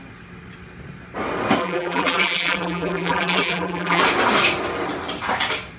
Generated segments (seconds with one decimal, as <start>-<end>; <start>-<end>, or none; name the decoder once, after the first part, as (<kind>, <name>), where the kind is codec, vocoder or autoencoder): 1.6-4.0 (vocoder, BigVGAN v2)